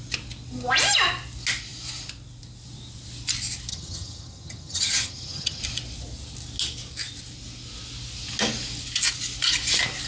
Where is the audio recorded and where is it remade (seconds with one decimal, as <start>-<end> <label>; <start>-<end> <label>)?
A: 0.0-3.7 recorded; 3.7-5.6 remade; 5.6-10.1 recorded